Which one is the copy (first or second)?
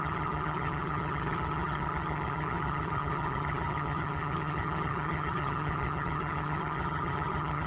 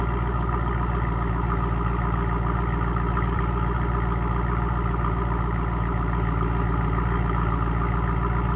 first